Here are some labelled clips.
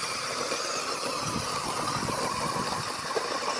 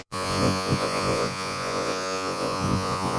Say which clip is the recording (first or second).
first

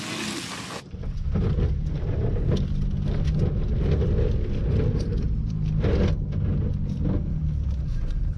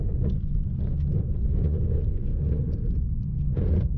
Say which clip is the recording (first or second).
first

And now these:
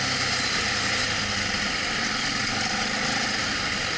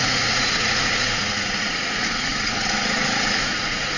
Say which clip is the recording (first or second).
first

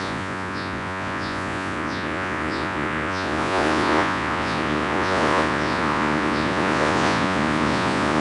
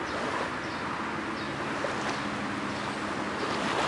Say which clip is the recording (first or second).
second